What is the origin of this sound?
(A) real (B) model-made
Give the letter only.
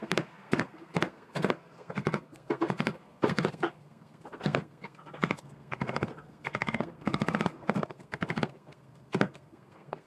B